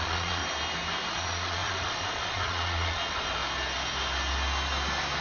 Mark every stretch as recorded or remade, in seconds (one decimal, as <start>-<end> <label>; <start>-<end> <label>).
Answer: 0.0-0.4 remade; 0.4-1.1 recorded; 1.1-3.4 remade; 3.4-5.2 recorded